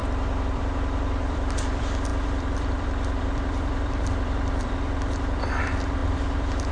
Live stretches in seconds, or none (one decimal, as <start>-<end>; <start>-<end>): none